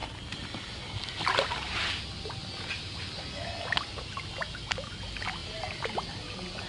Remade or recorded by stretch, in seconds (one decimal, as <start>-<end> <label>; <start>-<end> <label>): 0.0-6.7 recorded